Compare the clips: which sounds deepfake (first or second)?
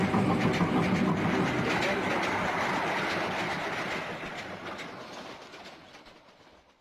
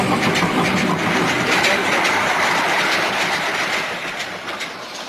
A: second